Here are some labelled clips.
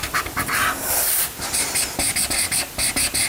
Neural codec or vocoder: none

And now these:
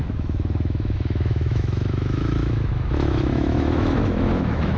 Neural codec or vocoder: autoencoder, DAC-VAE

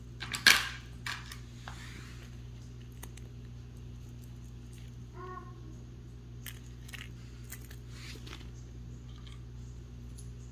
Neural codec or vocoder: none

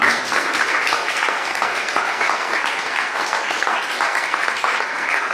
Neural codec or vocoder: codec, SNAC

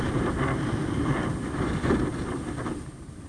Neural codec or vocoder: none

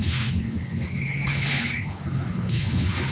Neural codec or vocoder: codec, HILCodec